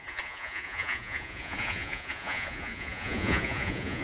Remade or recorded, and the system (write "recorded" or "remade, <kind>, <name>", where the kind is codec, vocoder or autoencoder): remade, vocoder, Vocos